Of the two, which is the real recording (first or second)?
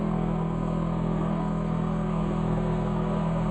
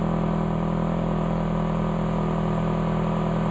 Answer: second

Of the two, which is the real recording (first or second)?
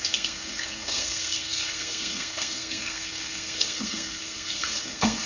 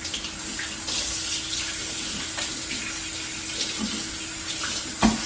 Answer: second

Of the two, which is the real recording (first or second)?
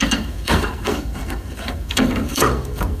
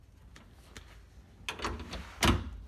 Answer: second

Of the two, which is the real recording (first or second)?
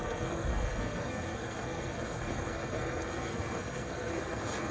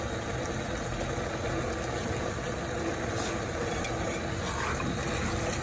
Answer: second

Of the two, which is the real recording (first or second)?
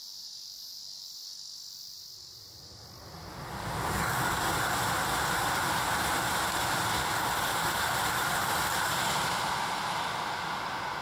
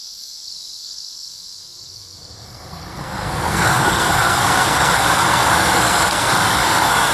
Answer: first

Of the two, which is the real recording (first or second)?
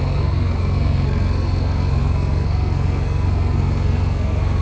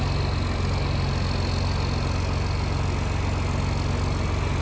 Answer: second